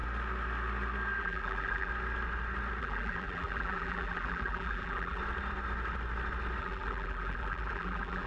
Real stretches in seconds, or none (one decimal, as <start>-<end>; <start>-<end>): 0.0-1.2; 1.9-2.8; 5.2-6.6